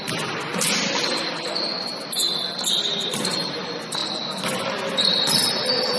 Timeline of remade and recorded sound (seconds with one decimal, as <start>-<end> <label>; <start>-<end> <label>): 0.0-4.0 recorded; 4.0-6.0 remade